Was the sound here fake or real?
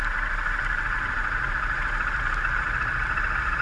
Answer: real